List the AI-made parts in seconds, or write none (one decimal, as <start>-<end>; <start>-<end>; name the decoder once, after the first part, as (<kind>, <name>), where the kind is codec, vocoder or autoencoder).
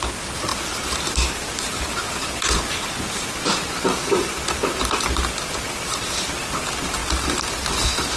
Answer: none